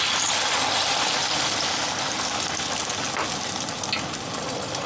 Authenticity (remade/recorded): recorded